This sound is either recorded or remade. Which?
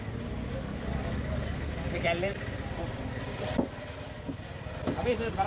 recorded